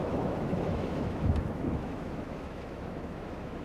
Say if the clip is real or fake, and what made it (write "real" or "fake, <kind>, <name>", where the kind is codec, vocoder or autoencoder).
fake, autoencoder, DAC-VAE